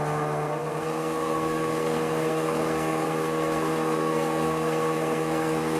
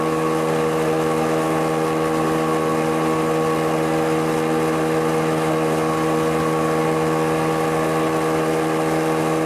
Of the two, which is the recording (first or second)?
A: second